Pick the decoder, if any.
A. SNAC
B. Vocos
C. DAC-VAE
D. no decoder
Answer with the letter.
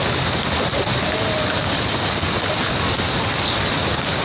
D